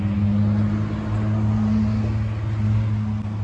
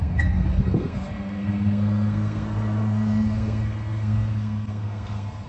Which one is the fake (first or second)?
second